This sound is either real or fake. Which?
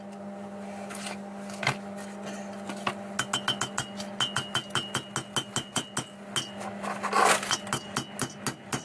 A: real